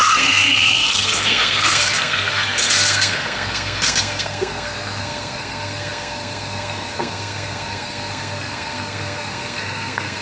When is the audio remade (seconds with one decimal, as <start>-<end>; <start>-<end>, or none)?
0.0-10.2